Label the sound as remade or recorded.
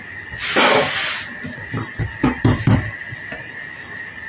recorded